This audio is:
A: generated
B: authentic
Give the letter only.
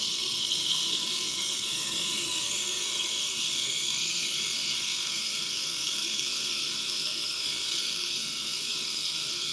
A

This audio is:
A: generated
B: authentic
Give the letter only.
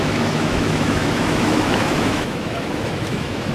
A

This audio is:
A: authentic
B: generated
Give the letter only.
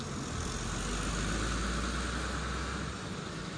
A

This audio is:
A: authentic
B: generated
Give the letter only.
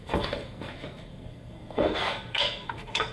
B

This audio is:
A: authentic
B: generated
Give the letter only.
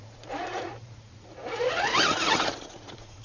B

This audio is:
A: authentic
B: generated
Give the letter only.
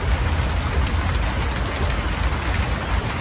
A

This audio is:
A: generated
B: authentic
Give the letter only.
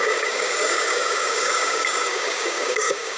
A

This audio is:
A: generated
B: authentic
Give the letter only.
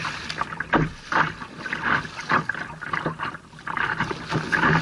B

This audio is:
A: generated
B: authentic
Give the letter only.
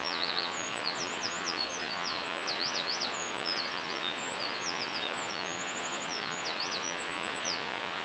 A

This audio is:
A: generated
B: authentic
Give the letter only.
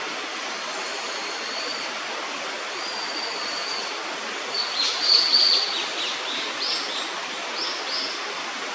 B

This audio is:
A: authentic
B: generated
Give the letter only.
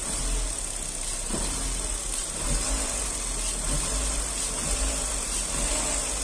A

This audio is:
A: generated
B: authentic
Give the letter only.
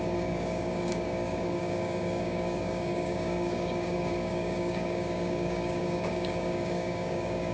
A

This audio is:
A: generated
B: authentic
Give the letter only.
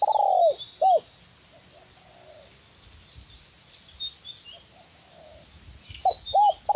B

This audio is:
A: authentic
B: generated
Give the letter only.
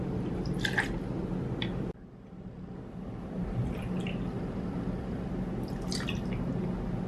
A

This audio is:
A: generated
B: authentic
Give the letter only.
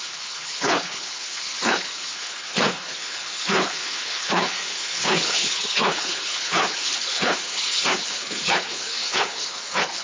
A